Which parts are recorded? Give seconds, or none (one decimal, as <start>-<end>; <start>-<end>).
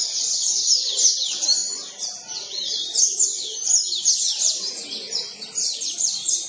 1.6-4.0